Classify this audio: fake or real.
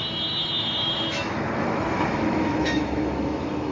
fake